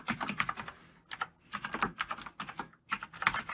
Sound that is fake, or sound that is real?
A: real